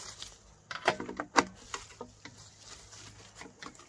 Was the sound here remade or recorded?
recorded